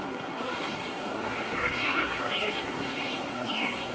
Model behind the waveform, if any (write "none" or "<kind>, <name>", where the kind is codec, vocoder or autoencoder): codec, SNAC